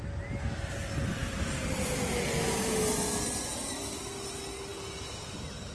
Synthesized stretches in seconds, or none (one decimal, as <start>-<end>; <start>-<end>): none